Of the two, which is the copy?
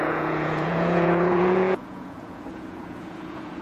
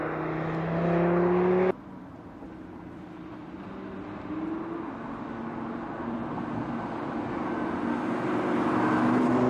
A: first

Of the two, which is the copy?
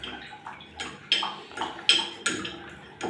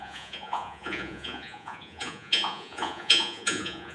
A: second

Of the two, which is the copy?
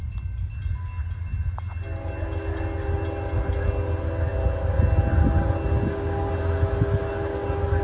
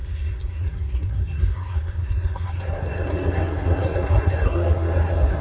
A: second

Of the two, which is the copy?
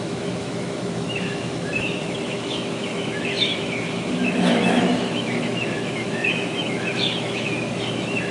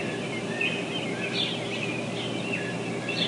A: first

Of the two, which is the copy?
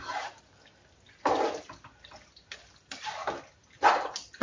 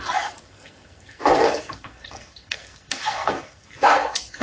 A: second